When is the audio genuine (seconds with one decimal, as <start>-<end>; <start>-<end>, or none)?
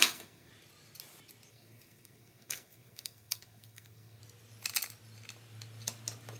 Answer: 0.5-1.5; 4.2-6.4